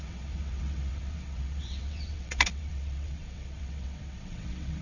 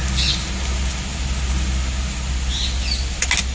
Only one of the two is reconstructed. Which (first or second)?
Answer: first